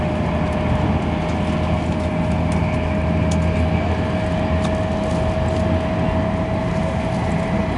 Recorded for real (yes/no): yes